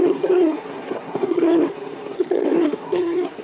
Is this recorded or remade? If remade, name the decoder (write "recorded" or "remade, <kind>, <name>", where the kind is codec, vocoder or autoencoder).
remade, codec, SNAC